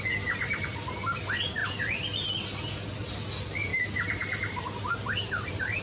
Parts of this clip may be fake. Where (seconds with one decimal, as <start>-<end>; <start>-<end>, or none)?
3.7-5.8